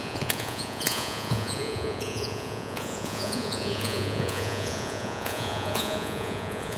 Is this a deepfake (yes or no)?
yes